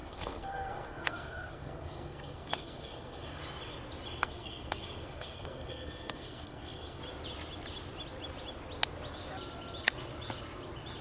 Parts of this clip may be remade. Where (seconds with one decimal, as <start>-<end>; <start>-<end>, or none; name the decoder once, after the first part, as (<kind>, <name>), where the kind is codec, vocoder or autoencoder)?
0.0-3.4 (codec, SNAC); 4.2-7.0